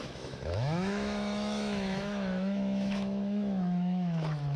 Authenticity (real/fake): fake